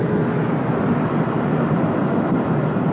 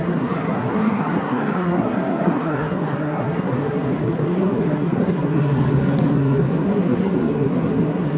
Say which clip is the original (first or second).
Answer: first